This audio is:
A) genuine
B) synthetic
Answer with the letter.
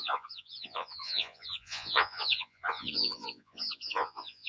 B